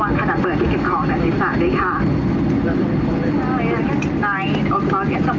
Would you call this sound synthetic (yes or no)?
no